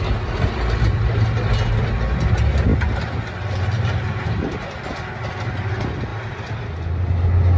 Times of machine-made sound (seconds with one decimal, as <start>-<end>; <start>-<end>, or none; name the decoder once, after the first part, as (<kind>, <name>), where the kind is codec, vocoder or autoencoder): none